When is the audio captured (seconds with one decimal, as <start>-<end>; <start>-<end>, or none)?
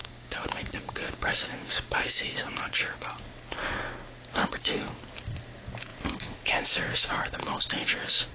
3.2-4.4; 5.0-7.4